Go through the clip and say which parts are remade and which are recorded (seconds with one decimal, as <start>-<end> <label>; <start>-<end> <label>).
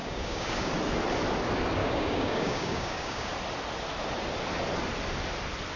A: 0.0-0.7 remade; 0.7-1.8 recorded; 1.8-3.3 remade; 3.3-5.8 recorded